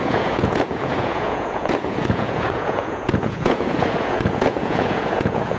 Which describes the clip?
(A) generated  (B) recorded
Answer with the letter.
A